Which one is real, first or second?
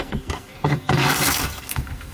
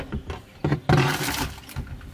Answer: second